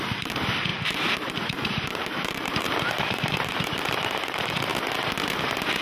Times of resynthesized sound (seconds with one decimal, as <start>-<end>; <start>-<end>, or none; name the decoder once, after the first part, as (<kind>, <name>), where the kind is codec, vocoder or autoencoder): 0.0-4.7 (vocoder, BigVGAN v2)